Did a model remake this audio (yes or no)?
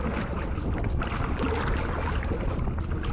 no